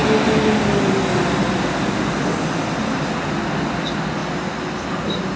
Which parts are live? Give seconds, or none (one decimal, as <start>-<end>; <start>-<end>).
0.0-5.4